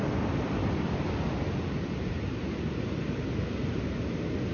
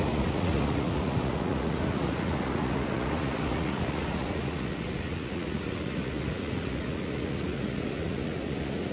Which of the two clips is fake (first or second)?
second